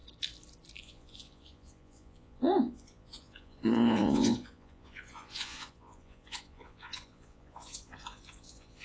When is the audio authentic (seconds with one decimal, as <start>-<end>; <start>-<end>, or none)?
0.0-0.8